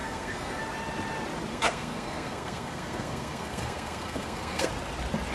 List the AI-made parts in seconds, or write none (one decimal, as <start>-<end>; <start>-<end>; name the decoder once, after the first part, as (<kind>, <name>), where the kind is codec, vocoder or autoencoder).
0.0-0.6 (codec, SNAC); 1.5-4.7